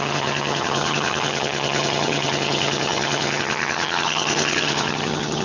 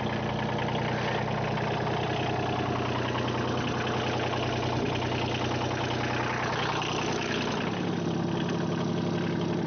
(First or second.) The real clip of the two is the second